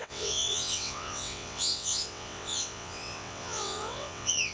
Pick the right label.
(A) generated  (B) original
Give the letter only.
A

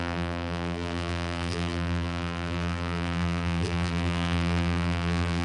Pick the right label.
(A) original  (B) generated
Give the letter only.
B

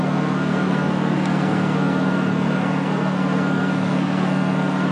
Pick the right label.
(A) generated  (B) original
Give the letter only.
A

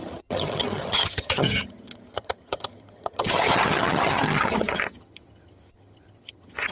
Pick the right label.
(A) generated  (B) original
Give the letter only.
A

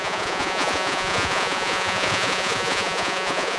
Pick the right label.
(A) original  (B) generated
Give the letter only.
B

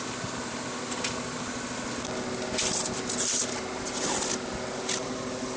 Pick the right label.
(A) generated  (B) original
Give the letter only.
B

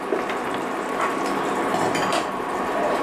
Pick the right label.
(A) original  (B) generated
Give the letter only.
B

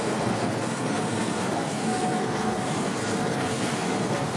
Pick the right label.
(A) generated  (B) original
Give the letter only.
A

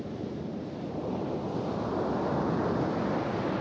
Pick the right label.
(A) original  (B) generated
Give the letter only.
A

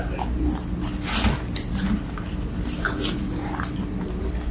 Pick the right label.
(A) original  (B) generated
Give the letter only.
A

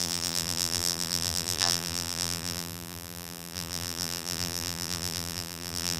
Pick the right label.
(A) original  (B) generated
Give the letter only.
B